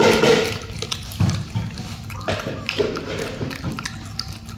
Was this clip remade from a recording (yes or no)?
no